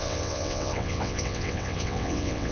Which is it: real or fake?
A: fake